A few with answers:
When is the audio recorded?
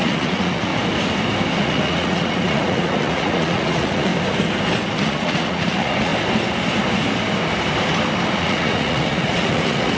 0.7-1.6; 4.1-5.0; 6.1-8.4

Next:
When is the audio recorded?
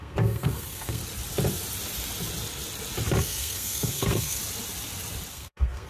1.0-3.2; 4.4-5.3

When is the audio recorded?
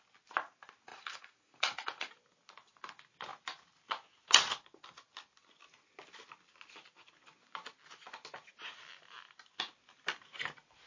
0.0-0.9; 2.1-10.9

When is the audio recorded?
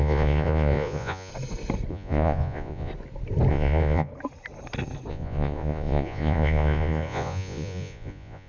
1.3-1.9; 2.9-3.5; 4.1-5.1